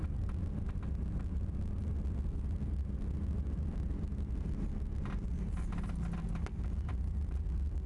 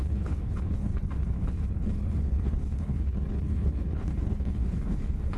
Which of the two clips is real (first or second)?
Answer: first